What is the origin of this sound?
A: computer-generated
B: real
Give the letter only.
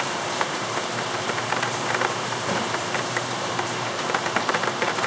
A